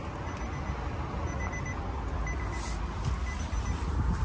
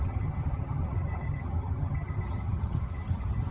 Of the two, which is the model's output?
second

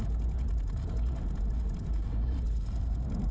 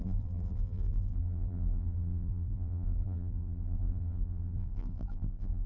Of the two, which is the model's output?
second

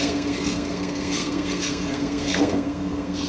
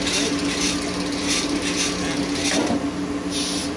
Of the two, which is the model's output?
first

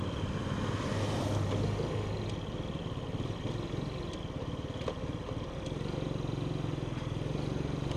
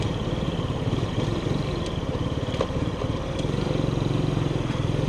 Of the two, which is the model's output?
second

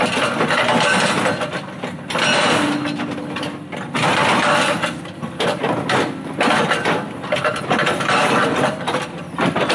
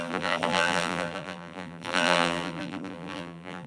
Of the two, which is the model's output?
second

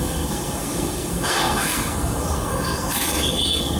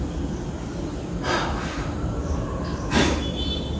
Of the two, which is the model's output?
first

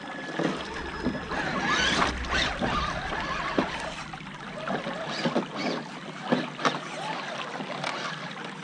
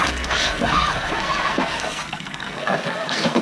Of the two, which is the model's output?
second